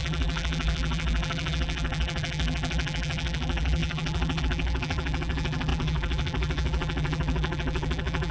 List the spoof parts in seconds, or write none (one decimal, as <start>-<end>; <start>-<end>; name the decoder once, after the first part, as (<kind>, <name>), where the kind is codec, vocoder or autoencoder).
0.0-8.3 (vocoder, BigVGAN v2)